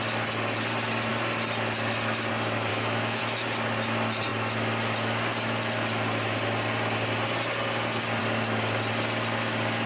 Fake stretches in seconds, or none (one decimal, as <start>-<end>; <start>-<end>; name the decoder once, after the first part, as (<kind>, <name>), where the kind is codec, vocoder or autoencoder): 2.7-3.2 (autoencoder, DAC-VAE)